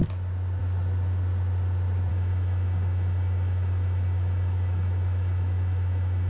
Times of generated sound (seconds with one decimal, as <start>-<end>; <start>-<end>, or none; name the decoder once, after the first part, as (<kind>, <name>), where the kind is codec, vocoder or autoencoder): 2.1-6.3 (autoencoder, DAC-VAE)